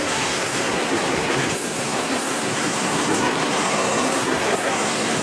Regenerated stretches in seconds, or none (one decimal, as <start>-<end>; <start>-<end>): 0.0-5.2